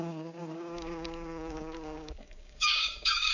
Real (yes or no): no